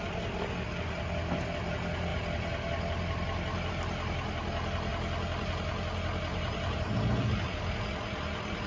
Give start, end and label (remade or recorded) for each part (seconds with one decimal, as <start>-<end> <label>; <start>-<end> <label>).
0.0-6.3 recorded; 6.3-6.9 remade; 6.9-8.7 recorded